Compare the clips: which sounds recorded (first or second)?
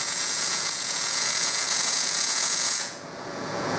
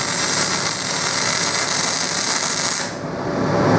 second